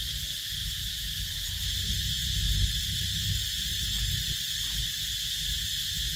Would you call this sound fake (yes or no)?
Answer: no